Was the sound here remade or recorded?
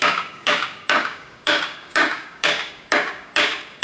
remade